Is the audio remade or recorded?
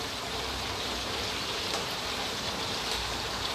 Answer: remade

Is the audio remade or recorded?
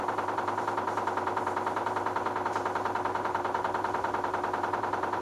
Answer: remade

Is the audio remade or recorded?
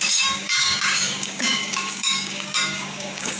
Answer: remade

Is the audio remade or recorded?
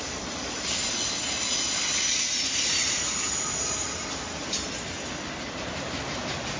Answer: recorded